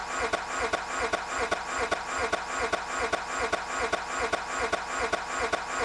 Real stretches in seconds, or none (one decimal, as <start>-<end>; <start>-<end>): 0.0-5.8

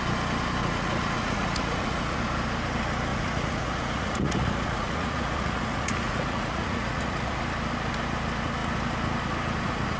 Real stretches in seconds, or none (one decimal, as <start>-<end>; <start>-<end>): 0.0-0.6; 2.2-3.1; 7.4-10.0

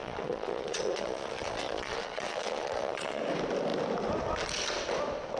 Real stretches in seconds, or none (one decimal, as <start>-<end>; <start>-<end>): 3.2-5.4

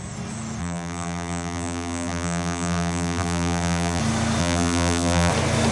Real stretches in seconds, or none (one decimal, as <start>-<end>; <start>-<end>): 0.0-0.6; 4.0-4.4; 5.3-5.7

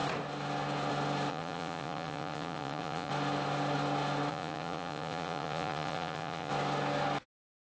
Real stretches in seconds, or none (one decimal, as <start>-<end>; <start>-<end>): 0.0-1.3; 3.1-4.3; 6.5-7.7

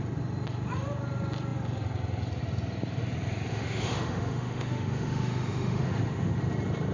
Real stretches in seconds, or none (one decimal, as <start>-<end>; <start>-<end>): 0.0-3.5; 6.4-6.9